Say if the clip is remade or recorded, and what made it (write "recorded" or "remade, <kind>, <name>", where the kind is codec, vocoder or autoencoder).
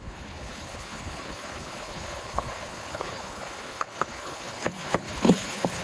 remade, codec, HILCodec